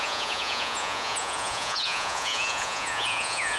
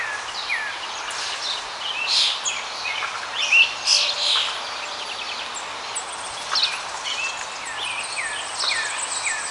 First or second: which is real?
second